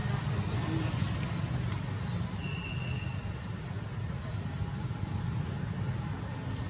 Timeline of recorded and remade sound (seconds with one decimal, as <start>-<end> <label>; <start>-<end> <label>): 0.0-6.7 recorded